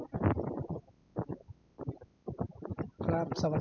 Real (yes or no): yes